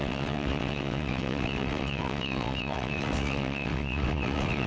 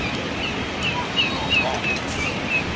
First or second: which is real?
second